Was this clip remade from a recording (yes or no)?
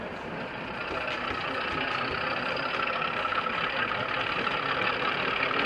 yes